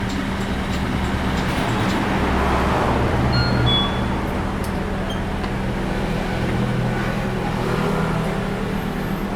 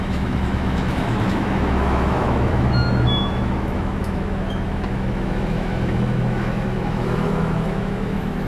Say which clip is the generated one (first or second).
second